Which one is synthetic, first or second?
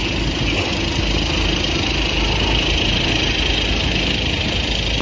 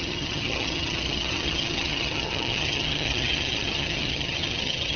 second